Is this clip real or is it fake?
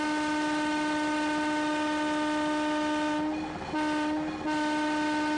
real